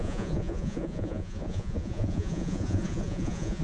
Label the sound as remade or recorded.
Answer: remade